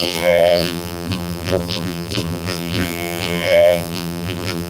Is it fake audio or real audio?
fake